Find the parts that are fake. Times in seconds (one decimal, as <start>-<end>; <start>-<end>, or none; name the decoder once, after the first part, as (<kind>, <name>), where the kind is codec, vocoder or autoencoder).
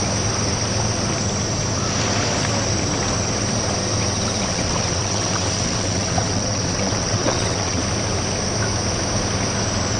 4.5-7.8 (vocoder, WaveNeXt)